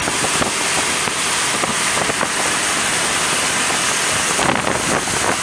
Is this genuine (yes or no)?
yes